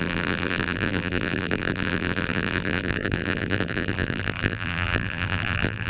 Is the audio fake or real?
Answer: fake